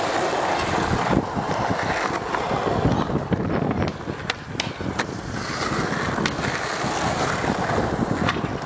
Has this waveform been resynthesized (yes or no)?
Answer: no